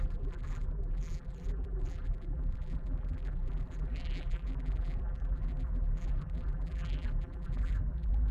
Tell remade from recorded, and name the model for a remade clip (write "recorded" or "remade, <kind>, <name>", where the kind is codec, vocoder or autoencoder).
remade, vocoder, BigVGAN v2